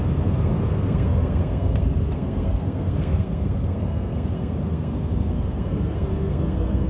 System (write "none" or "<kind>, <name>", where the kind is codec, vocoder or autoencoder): codec, SNAC